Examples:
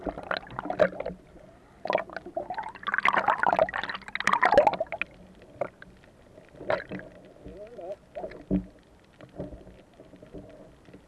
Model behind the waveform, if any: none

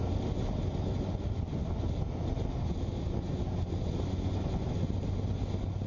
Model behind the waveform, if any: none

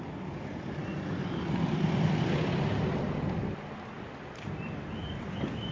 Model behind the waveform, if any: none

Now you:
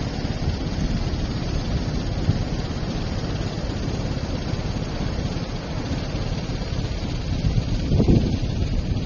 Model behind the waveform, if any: none